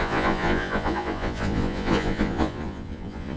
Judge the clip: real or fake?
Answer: fake